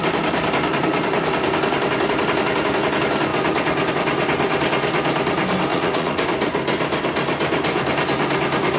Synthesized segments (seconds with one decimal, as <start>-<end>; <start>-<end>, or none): 5.7-6.2